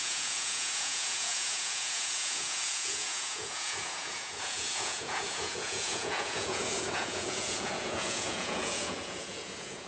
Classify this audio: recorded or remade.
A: remade